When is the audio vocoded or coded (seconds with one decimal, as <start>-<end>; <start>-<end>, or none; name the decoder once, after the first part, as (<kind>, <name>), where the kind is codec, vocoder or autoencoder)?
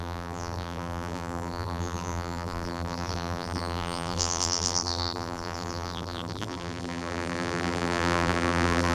0.0-8.9 (vocoder, BigVGAN v2)